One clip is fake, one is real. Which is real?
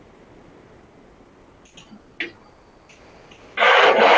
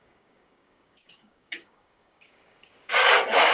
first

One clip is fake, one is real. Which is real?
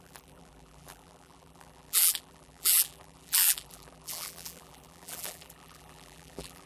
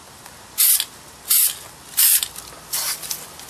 second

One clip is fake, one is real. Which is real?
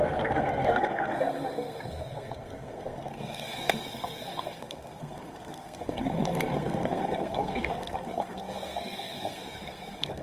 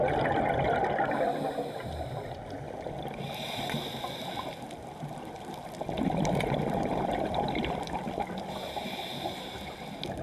second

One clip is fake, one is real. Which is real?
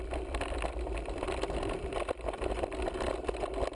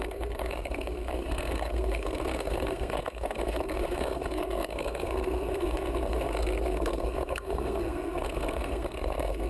first